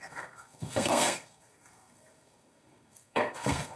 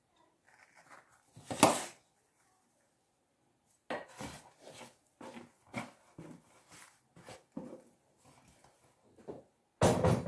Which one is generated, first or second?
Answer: first